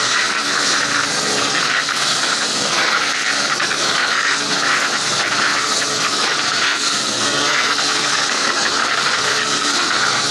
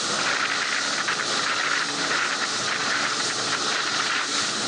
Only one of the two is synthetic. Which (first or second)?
first